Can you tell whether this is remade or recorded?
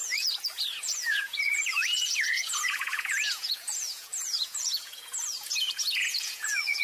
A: remade